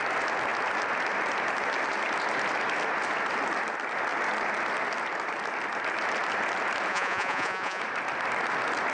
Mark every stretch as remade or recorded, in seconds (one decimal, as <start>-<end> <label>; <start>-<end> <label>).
0.0-6.9 recorded; 6.9-7.8 remade; 7.8-8.9 recorded